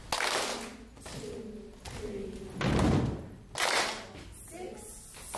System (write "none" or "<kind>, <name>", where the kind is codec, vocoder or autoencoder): none